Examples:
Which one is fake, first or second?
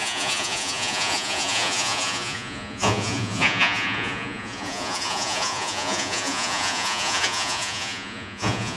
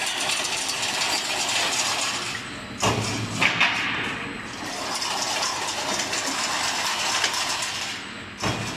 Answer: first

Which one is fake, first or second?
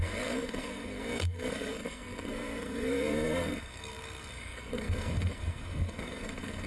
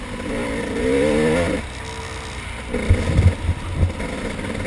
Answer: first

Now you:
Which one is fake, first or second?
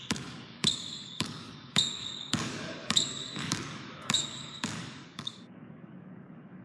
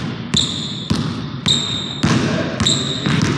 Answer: first